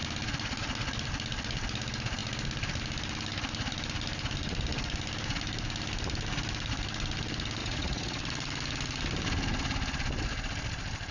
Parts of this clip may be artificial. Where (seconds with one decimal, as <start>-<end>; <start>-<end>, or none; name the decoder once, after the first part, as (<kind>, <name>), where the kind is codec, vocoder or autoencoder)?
7.6-8.2 (vocoder, Vocos)